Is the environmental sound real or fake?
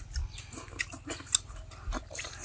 real